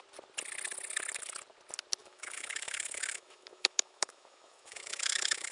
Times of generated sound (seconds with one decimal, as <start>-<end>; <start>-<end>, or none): 2.0-5.5